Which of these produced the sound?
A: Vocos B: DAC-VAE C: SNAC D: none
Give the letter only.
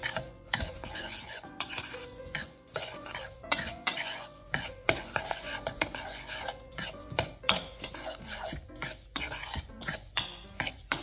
A